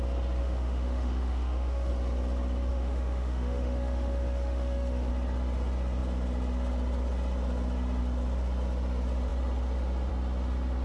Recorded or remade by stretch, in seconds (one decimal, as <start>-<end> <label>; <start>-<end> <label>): 0.0-0.4 recorded; 0.4-1.9 remade; 1.9-2.7 recorded; 2.7-5.1 remade; 5.1-10.8 recorded